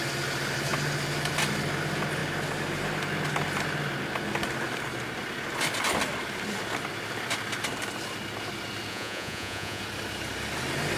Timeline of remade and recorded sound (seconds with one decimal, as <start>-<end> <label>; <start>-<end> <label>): 0.0-8.9 recorded; 8.9-9.8 remade; 9.8-11.0 recorded